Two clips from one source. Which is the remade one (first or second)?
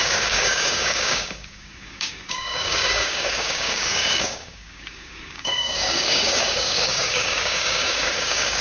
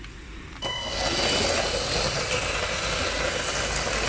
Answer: first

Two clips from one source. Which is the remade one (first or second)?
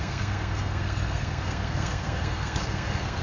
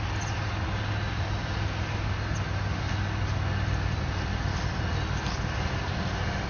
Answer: first